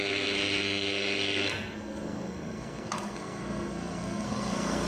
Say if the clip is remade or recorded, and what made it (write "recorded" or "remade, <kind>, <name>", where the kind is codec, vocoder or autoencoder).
remade, codec, SNAC